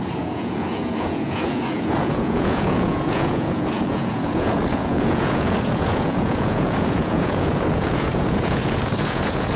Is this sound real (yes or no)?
no